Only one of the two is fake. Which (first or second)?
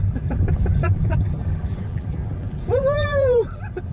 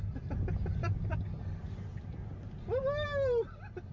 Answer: first